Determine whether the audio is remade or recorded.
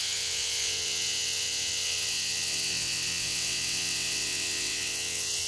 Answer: remade